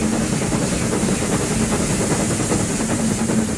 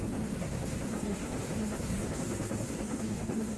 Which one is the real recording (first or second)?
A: first